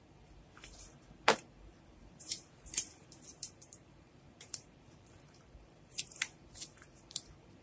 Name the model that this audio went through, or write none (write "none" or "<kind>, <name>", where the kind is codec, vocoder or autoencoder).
vocoder, BigVGAN v2